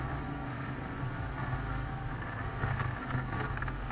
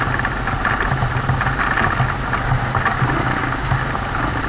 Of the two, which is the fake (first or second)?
first